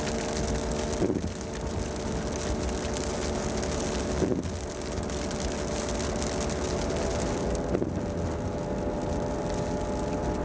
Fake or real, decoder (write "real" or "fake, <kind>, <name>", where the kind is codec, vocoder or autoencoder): real